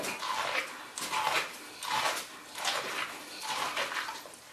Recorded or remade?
recorded